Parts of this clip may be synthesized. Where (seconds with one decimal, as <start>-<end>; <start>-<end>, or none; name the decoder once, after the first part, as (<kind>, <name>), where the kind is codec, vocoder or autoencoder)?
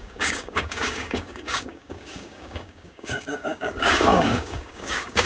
0.0-5.3 (codec, DAC)